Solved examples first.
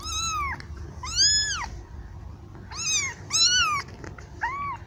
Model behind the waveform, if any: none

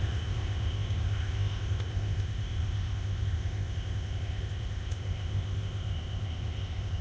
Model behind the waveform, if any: codec, ZipCodec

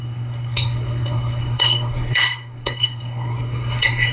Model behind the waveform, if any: codec, SNAC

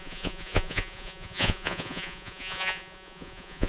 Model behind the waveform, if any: vocoder, Vocos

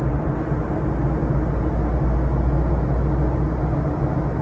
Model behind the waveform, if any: none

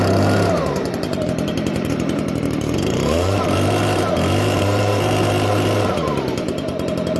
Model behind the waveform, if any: vocoder, BigVGAN v2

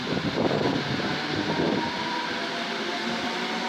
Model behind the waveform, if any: vocoder, BigVGAN v2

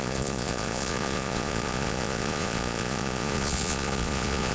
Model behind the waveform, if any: vocoder, Vocos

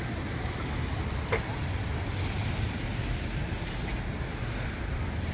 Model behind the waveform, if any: none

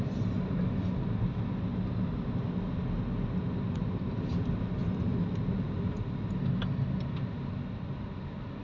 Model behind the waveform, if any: none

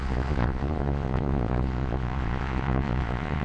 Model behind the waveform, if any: vocoder, Vocos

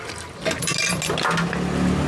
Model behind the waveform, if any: none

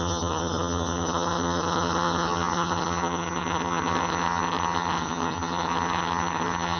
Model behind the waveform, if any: vocoder, HiFi-GAN